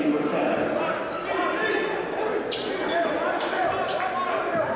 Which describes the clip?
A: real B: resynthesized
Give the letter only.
A